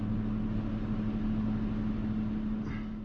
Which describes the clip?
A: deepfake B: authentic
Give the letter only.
B